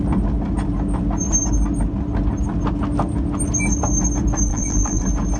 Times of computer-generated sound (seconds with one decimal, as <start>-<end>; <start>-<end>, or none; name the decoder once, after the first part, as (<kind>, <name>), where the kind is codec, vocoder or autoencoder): 4.5-5.0 (vocoder, BigVGAN v2)